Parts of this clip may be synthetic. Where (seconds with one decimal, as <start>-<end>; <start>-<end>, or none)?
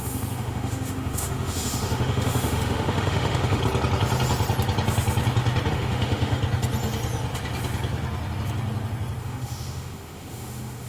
0.0-3.6; 5.7-6.4; 9.2-10.9